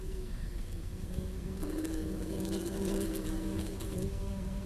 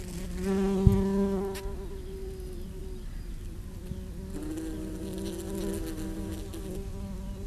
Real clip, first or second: second